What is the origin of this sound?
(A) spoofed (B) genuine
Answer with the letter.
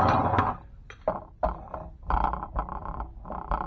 B